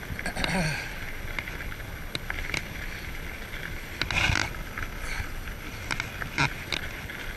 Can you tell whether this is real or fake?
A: real